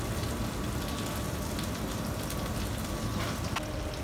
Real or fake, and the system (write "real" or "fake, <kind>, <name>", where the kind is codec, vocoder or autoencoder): real